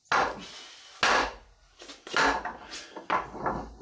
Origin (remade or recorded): recorded